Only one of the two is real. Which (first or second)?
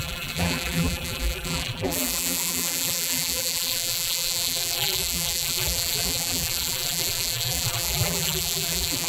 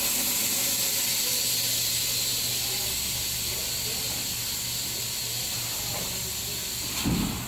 second